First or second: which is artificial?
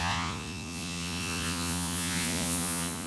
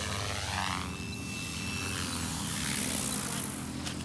first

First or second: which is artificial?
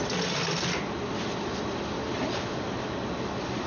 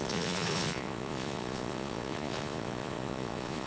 second